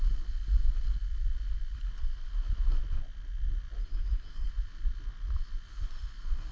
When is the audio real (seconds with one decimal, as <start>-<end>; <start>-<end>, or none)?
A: 0.0-3.8; 4.5-6.5